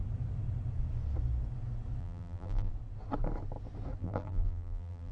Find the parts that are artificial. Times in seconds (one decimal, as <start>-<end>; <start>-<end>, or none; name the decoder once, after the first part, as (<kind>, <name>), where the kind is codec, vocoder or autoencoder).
2.0-2.7 (vocoder, BigVGAN v2); 4.0-5.1